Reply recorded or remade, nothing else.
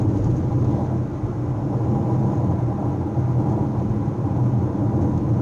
recorded